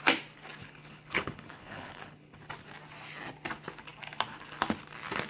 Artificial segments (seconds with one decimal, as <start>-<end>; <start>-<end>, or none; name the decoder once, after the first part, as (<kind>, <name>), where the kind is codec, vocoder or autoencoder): 0.6-2.4 (codec, HILCodec)